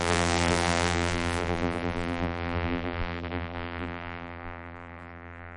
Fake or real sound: fake